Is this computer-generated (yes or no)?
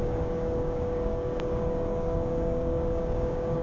yes